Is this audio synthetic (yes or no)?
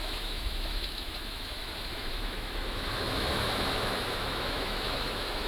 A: yes